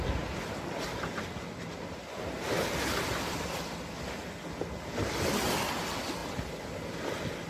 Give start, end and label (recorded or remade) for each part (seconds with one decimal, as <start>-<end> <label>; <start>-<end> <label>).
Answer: 0.0-7.5 recorded